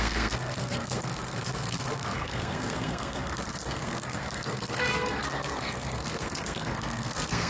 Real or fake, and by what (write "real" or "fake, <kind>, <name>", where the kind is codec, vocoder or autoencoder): fake, codec, SNAC